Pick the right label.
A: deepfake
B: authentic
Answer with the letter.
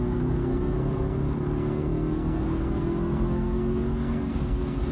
A